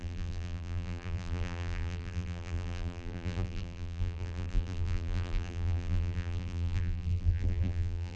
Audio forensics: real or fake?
fake